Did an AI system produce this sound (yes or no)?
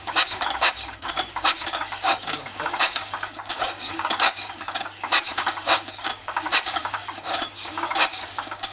yes